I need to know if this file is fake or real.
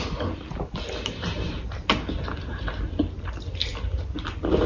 real